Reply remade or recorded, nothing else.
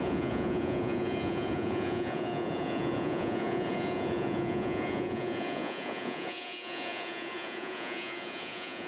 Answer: remade